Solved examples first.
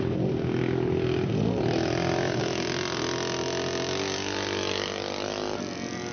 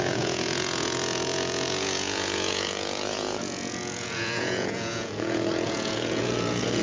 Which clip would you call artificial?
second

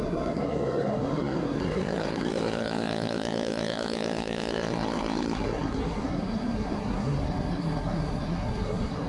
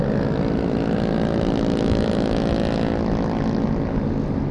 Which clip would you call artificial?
first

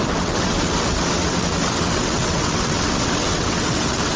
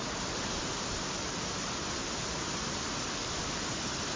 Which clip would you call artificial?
first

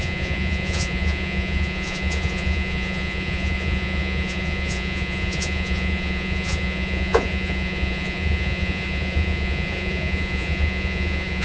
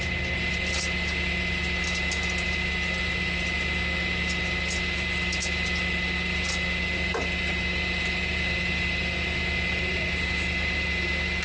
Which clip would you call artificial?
first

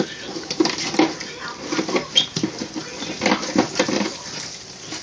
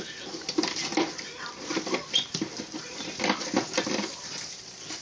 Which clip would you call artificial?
second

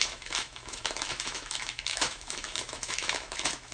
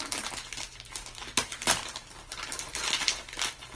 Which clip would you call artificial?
first